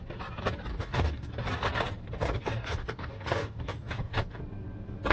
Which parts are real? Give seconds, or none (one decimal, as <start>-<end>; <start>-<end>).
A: 0.0-0.7; 1.3-2.2; 4.4-5.1